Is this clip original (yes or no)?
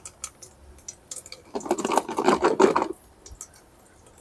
yes